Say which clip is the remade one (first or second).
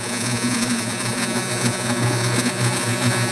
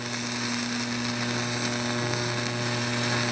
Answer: first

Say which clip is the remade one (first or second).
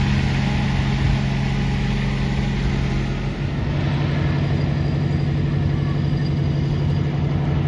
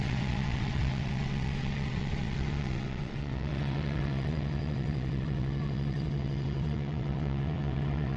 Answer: second